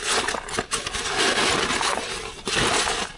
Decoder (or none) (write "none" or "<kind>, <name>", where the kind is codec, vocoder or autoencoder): none